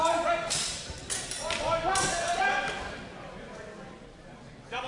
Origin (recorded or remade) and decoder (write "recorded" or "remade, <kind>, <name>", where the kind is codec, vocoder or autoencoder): remade, vocoder, BigVGAN v2